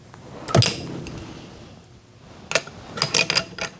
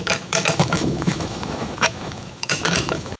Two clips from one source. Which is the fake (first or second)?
second